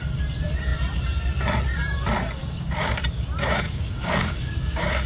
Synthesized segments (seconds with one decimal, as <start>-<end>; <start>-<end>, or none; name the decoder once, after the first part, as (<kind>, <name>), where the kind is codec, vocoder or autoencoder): 2.4-3.0 (codec, DAC); 3.4-5.1